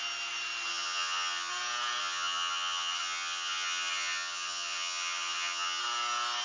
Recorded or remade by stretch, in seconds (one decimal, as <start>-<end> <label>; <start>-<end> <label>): 0.0-0.7 recorded; 0.7-1.5 remade; 1.5-2.0 recorded; 2.0-5.8 remade; 5.8-6.4 recorded